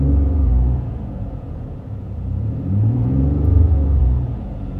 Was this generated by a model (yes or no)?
yes